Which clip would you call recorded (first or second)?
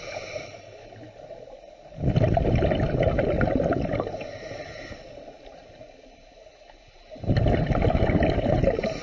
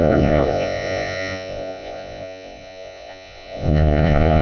first